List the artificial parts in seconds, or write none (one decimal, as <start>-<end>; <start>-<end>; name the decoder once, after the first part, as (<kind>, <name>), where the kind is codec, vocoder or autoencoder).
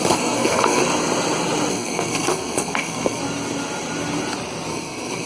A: 0.0-0.8 (codec, SNAC); 1.7-3.2; 4.7-5.3